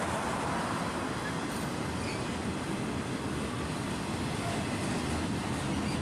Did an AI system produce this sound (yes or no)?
no